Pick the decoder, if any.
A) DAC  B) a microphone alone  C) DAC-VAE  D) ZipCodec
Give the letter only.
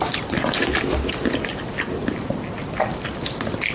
B